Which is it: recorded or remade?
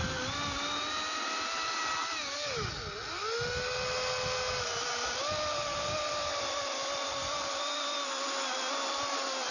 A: recorded